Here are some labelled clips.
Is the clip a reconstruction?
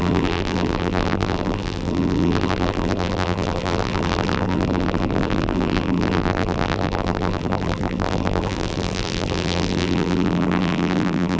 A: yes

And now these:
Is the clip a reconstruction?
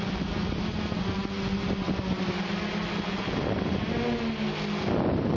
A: no